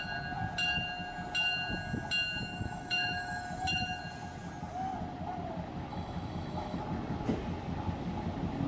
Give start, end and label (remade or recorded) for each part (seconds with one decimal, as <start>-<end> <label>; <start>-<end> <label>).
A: 0.0-2.5 recorded; 2.5-4.0 remade; 4.0-5.9 recorded; 5.9-6.8 remade; 6.8-8.7 recorded